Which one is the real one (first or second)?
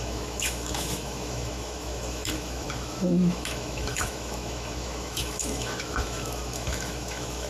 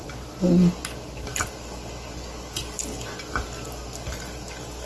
second